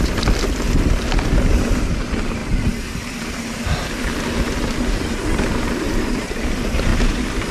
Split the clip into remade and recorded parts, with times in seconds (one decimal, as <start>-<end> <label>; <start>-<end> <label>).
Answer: 0.0-7.5 recorded